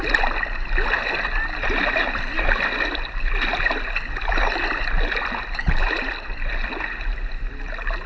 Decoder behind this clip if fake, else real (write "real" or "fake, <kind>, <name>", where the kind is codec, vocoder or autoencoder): real